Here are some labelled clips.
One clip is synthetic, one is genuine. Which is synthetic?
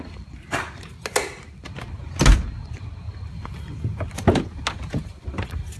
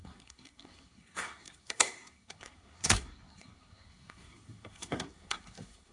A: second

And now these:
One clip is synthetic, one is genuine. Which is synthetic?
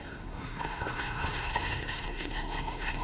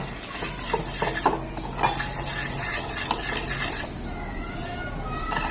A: first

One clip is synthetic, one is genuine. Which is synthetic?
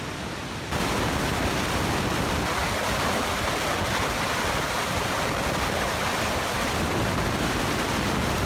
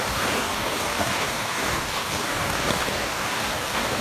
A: second